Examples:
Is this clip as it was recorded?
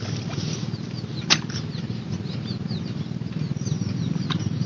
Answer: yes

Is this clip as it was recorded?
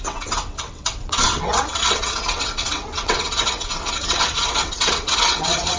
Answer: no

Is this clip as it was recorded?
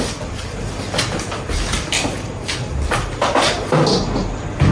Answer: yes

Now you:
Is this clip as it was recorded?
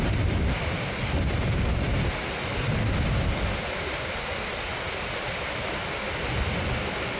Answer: yes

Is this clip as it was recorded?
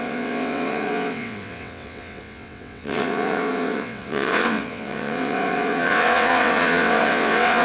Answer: no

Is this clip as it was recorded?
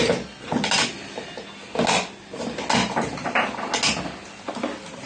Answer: yes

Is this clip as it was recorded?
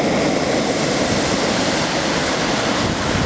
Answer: yes